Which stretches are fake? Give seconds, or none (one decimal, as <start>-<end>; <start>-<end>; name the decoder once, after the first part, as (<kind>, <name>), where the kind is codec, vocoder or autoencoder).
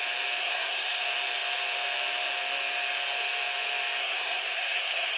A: 0.4-1.0 (codec, SNAC); 4.0-5.2